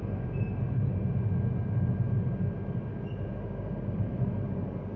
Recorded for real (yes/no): yes